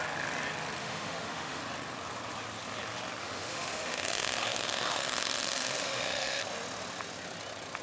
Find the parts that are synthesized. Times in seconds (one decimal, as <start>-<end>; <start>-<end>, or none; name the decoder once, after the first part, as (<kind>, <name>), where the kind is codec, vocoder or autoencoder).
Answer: 0.8-1.6 (autoencoder, DAC-VAE); 3.2-6.4